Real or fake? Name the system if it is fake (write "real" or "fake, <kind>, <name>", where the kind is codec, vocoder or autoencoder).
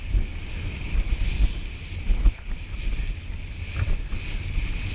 real